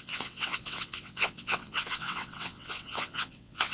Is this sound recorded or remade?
remade